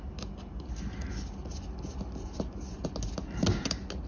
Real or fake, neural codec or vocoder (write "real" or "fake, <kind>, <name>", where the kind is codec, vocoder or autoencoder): real